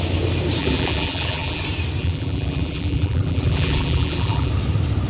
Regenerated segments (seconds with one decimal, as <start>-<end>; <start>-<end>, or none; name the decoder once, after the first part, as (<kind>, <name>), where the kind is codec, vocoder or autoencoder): 0.6-1.6 (vocoder, BigVGAN v2); 2.0-4.5